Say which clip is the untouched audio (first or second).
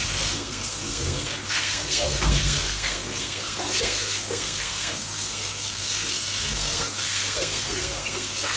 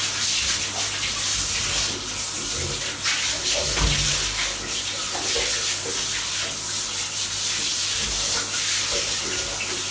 second